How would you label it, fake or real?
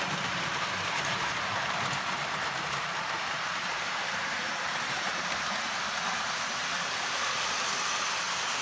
fake